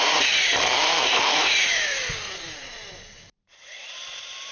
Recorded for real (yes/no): no